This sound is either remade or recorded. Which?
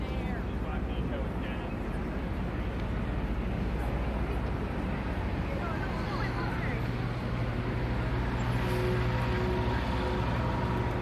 recorded